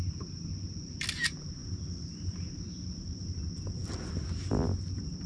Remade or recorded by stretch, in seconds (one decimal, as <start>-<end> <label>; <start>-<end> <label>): 0.0-5.3 recorded